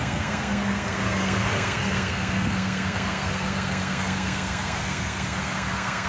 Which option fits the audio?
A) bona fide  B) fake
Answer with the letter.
B